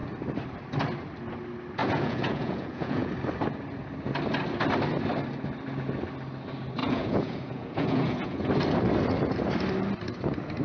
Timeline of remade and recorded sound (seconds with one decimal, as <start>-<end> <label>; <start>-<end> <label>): 0.0-1.8 recorded; 1.8-3.1 remade; 3.1-6.8 recorded; 6.8-8.5 remade; 8.5-10.6 recorded